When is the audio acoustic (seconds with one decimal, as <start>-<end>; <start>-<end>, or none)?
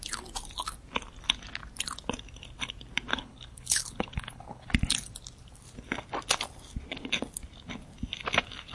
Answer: 0.0-3.1; 4.7-8.7